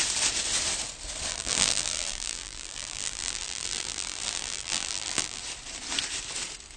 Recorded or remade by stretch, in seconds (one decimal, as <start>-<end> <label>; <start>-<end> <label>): 0.0-1.3 recorded; 1.3-5.4 remade; 5.4-6.8 recorded